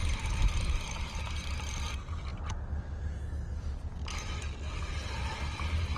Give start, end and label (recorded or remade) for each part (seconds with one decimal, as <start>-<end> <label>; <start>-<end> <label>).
0.0-1.2 remade; 1.2-1.9 recorded; 1.9-2.3 remade; 2.3-6.0 recorded